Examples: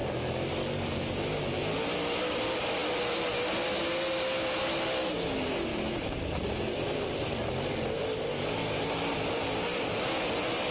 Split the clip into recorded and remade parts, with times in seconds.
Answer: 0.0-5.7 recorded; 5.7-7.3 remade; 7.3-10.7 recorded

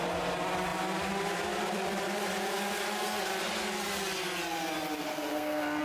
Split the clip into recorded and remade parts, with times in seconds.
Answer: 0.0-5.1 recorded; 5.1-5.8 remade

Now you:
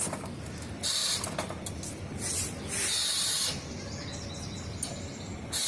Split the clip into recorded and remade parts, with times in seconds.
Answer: 0.0-5.7 recorded